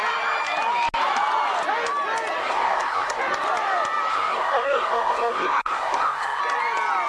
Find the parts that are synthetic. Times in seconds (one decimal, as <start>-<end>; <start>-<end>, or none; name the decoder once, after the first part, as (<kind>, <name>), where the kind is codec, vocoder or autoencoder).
2.4-3.2 (codec, SNAC); 4.1-6.4